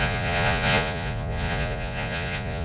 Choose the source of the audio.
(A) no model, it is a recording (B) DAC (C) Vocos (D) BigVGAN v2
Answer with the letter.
C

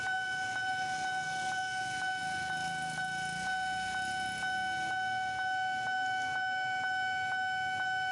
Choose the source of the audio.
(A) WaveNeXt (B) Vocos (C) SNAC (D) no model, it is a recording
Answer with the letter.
D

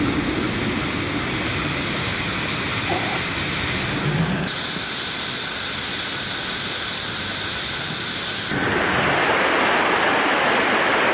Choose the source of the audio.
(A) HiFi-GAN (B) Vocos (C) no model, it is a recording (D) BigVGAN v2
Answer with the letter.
C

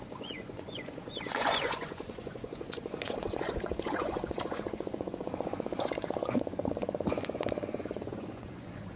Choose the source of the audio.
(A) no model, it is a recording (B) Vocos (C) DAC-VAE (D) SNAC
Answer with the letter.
B